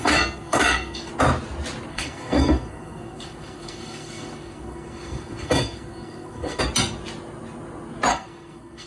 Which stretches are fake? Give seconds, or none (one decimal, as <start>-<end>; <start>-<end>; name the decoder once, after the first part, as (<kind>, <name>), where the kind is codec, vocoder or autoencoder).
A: 0.0-1.1 (codec, SNAC); 1.9-6.6; 8.1-8.9